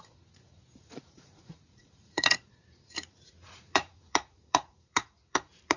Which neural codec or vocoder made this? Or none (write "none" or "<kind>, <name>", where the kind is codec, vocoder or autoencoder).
vocoder, Vocos